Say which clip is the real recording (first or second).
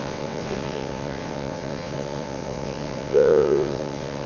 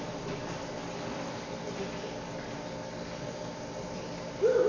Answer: second